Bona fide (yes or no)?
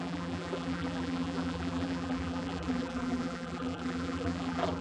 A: no